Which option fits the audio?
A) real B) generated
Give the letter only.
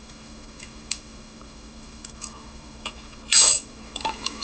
B